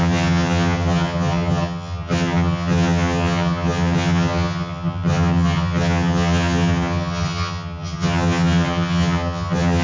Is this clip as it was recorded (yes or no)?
no